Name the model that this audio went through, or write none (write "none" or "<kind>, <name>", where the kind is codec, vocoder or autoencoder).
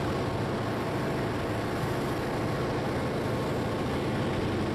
none